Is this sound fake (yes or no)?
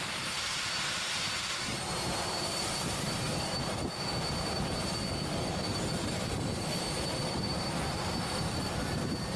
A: yes